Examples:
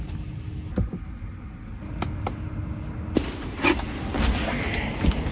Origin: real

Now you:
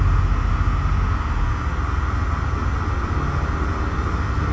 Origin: real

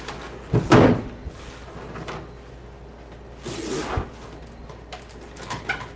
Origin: real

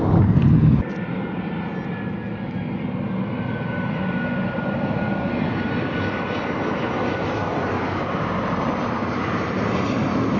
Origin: real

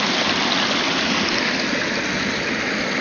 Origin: real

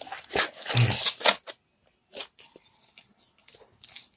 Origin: real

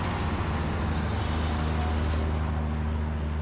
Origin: real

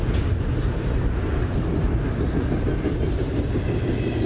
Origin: real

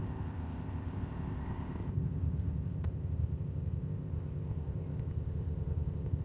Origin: fake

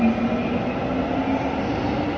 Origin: real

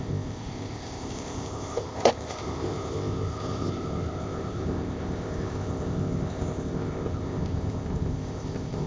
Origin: fake